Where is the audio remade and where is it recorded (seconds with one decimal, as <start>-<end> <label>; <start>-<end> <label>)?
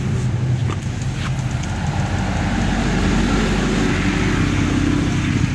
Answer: 0.0-5.5 recorded